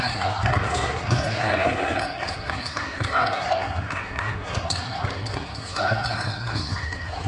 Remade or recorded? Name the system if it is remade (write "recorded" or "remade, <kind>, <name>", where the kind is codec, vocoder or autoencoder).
remade, codec, SNAC